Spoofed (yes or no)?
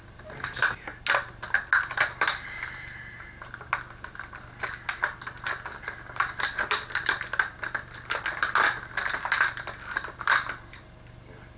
no